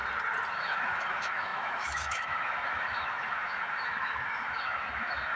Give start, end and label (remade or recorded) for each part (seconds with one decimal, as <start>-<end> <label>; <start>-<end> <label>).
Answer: 0.0-0.5 recorded; 0.5-5.4 remade